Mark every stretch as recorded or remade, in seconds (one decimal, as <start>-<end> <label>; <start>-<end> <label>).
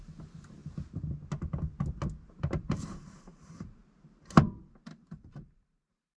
0.0-0.6 remade; 0.6-2.4 recorded; 2.4-3.8 remade; 3.8-4.7 recorded; 4.7-6.2 remade